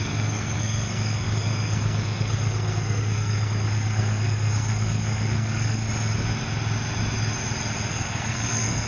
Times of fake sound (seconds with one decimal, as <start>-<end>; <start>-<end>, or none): 0.0-5.8; 7.9-8.9